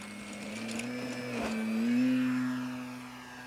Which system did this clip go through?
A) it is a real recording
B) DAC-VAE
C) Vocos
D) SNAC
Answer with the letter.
A